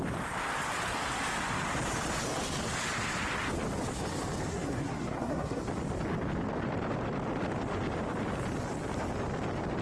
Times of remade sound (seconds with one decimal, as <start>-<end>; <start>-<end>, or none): 4.5-5.6

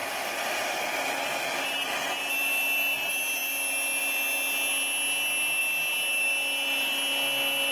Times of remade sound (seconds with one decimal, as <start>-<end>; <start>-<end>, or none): none